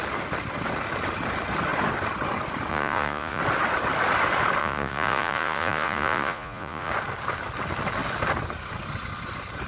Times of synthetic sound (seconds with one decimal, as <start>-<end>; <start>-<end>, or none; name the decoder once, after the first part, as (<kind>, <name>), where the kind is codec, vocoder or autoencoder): 2.7-3.4 (vocoder, Vocos); 4.6-6.9

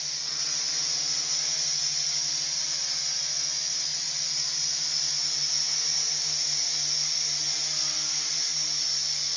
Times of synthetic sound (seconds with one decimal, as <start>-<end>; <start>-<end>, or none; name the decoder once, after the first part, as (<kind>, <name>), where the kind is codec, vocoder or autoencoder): none

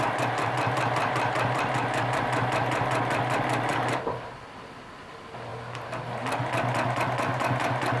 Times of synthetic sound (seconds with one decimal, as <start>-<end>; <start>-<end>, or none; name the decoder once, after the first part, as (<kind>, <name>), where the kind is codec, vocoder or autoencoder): none

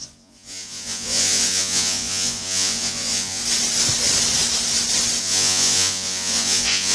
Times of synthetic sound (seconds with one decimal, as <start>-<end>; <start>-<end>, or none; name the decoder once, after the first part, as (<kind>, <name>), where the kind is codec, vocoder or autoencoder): 0.0-3.4 (vocoder, Vocos); 5.2-6.9